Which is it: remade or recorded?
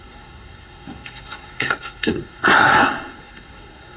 remade